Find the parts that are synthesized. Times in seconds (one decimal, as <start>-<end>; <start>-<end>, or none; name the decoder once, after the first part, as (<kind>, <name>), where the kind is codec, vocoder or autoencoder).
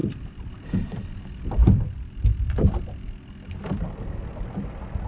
0.0-0.5 (vocoder, BigVGAN v2)